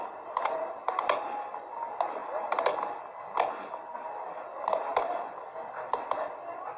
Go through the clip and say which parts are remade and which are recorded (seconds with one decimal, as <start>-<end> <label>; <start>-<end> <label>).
0.0-6.8 recorded